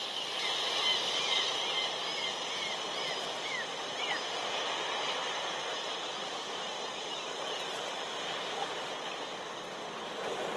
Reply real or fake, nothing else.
real